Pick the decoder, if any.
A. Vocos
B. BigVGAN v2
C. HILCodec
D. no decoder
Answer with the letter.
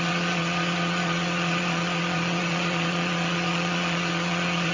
A